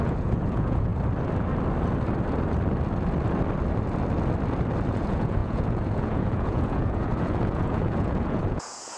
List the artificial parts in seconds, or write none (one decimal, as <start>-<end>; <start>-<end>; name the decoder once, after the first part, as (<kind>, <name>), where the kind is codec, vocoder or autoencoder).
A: 0.0-0.9 (vocoder, Vocos); 4.9-9.0